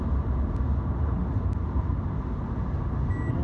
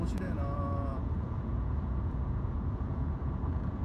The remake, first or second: second